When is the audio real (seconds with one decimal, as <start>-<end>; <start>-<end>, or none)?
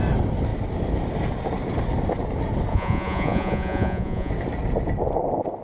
0.0-2.7; 4.3-5.6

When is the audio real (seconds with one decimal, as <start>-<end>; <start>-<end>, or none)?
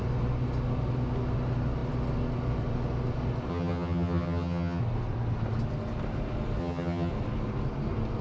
0.0-3.5; 4.8-6.6; 7.1-8.2